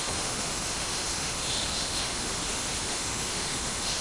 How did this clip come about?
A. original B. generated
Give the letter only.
B